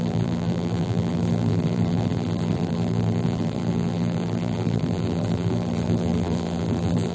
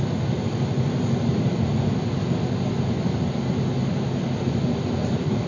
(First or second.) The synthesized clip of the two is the first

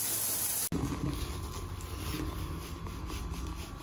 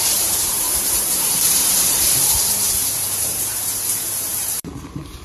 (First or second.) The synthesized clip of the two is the second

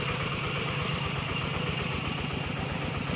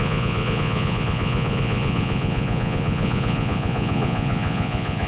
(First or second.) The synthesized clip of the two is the second